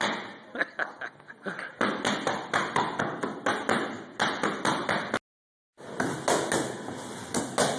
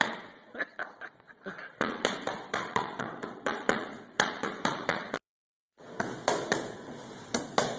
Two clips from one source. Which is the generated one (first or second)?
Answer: second